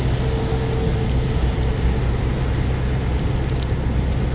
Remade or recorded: recorded